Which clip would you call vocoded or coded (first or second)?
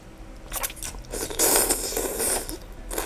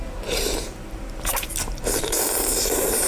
second